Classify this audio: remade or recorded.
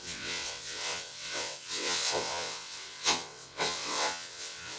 remade